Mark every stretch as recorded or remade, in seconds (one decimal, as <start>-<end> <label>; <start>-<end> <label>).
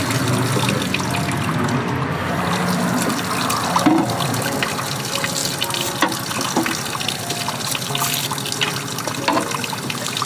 0.0-10.3 recorded